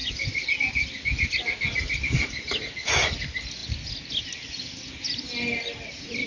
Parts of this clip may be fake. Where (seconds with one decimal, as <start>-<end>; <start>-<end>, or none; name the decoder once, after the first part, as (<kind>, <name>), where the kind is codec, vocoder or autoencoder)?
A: none